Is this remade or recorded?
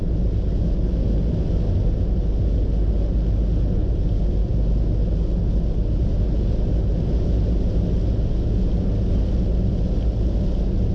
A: recorded